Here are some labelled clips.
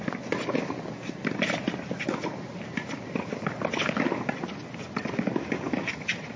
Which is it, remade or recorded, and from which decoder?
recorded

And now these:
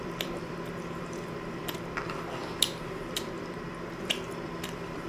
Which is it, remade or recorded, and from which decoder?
remade, vocoder, BigVGAN v2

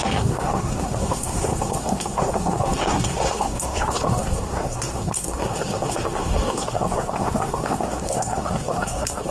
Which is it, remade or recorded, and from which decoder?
remade, codec, SNAC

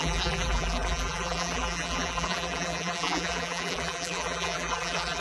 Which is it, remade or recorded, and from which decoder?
remade, vocoder, BigVGAN v2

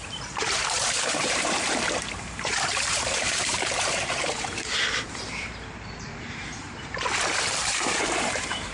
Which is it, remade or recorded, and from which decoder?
remade, vocoder, BigVGAN v2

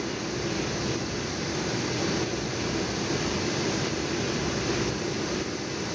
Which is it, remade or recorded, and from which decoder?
recorded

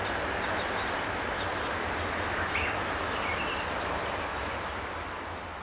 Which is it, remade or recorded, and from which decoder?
recorded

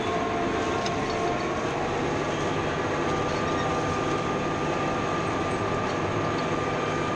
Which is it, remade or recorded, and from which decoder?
recorded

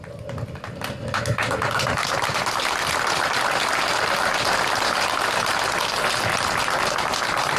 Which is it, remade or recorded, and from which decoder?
recorded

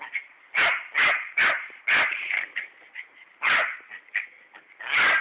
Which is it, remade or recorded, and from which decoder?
recorded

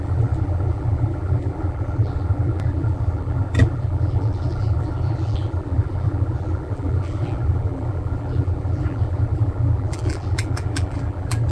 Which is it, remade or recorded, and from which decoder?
remade, vocoder, BigVGAN v2